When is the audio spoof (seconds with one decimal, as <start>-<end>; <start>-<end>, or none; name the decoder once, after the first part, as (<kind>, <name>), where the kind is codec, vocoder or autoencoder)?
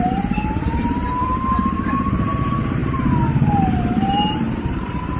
0.0-2.8 (vocoder, BigVGAN v2); 3.6-5.2